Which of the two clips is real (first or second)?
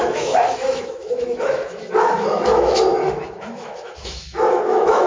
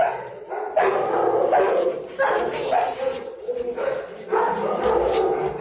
second